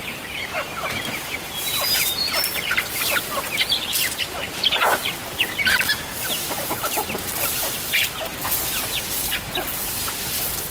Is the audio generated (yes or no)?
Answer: yes